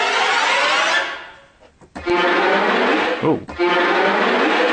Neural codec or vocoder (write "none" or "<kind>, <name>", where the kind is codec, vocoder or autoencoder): none